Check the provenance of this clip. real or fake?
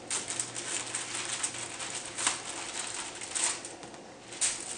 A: real